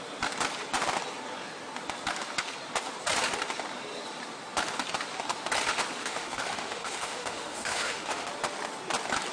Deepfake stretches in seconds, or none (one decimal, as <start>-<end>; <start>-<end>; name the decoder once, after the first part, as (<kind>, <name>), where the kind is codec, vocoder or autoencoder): 6.0-8.3 (autoencoder, DAC-VAE)